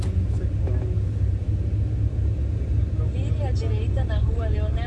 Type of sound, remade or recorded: recorded